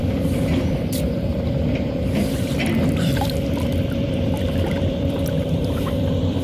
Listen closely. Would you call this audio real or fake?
fake